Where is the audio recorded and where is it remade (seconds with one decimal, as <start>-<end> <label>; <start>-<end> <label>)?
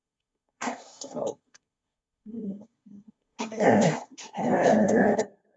0.0-5.6 remade